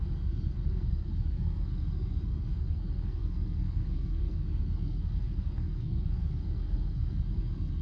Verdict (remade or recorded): remade